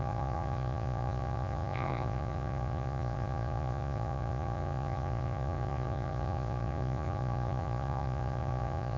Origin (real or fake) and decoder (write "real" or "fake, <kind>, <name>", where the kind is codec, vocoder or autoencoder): fake, vocoder, Vocos